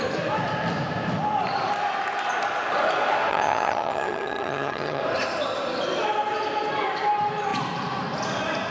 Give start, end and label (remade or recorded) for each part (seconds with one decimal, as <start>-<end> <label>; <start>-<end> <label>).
0.0-3.3 recorded; 3.3-5.0 remade; 5.0-8.7 recorded